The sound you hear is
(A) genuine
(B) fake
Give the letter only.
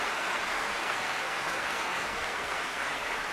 B